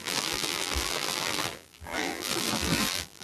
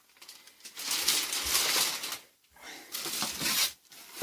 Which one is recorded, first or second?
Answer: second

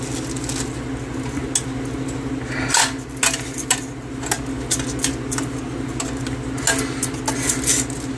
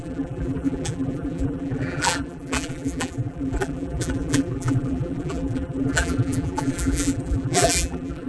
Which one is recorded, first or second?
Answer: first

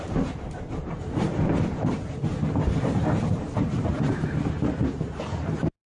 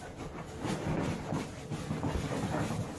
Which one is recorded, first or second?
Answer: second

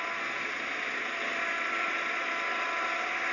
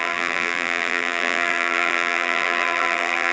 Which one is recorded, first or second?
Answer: first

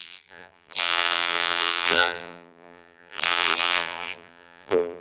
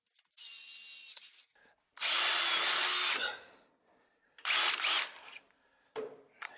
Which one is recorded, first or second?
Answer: second